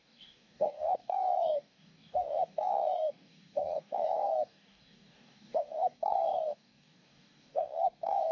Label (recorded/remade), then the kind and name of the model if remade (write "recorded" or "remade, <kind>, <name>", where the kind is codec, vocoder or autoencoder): remade, codec, DAC